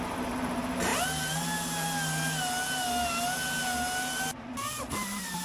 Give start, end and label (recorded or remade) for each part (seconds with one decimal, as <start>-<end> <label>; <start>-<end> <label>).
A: 0.0-5.4 recorded